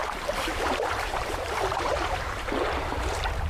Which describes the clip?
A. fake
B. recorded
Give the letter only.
A